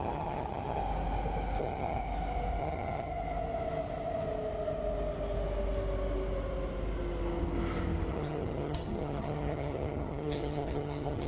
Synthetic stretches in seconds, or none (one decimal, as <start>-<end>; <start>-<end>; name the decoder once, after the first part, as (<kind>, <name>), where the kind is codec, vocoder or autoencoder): 0.0-0.8 (vocoder, HiFi-GAN); 1.6-2.0; 2.6-3.1; 8.1-11.3